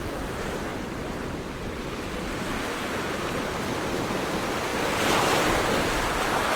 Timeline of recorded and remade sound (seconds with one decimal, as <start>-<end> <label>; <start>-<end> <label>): 0.0-0.7 recorded; 0.7-2.5 remade; 2.5-6.6 recorded